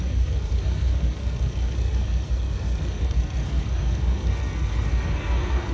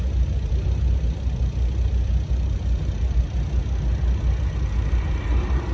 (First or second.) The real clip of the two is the second